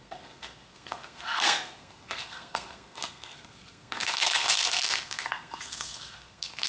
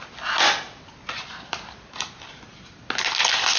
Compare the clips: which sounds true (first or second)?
second